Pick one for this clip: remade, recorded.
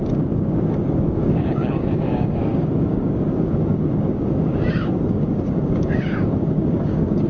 remade